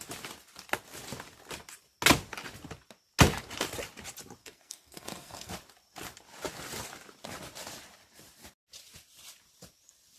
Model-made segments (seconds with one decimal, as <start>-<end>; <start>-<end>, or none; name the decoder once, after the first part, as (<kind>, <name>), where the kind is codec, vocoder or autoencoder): 4.4-5.5 (codec, SNAC)